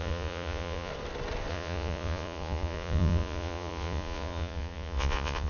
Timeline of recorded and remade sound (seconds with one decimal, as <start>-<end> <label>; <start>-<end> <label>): 0.0-0.9 remade; 0.9-1.5 recorded; 1.5-5.5 remade